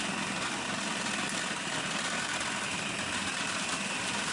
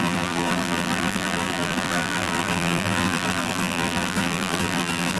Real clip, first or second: first